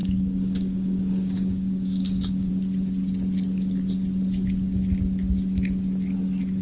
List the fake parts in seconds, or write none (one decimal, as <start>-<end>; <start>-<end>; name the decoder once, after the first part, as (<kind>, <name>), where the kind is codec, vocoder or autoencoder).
0.0-2.5 (codec, DAC)